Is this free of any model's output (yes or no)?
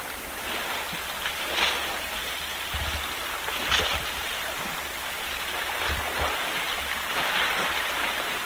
yes